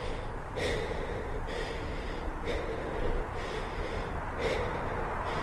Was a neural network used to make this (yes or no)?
no